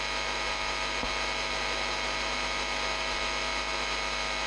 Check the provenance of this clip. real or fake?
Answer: real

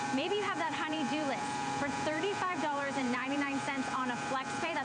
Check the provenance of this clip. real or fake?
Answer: fake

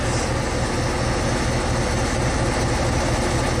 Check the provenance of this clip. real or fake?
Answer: real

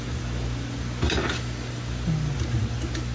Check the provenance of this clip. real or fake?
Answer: real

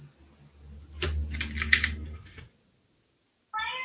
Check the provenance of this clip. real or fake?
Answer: real